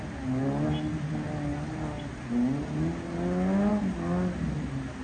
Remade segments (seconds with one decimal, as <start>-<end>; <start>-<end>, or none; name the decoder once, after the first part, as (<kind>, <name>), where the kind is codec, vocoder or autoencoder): none